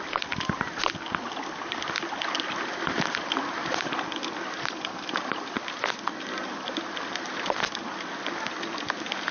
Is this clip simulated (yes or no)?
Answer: no